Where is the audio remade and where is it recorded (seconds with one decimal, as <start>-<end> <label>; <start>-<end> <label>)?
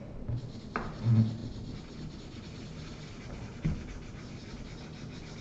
0.0-5.4 recorded